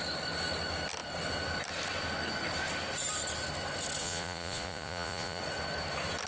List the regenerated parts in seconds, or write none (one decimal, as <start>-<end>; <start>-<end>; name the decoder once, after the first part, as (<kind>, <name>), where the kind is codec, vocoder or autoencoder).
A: 4.0-5.4 (vocoder, Vocos)

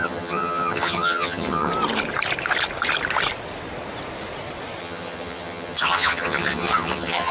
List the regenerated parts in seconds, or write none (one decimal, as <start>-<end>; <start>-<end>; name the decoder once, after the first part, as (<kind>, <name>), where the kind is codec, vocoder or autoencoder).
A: 0.0-1.7 (vocoder, HiFi-GAN); 4.8-7.3

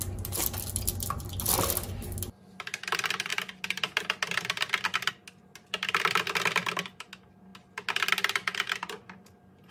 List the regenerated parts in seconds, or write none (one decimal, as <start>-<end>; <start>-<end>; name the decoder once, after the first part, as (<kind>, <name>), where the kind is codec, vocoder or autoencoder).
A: none

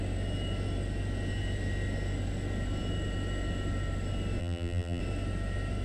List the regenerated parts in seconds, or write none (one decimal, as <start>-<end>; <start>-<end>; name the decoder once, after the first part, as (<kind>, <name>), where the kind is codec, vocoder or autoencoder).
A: 4.4-5.0 (vocoder, BigVGAN v2)

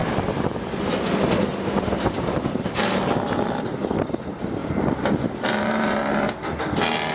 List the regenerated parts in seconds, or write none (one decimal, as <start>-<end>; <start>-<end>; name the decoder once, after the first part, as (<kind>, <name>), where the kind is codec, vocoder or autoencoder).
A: 0.0-0.6 (vocoder, BigVGAN v2); 1.5-2.9; 4.6-6.0

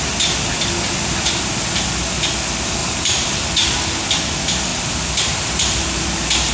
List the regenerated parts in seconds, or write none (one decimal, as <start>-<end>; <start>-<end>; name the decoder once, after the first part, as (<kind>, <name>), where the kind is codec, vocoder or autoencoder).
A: 2.8-3.4 (vocoder, BigVGAN v2)

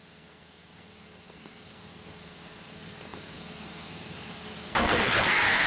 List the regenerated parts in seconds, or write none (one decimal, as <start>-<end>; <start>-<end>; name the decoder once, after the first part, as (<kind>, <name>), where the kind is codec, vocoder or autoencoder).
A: 0.0-5.7 (codec, SNAC)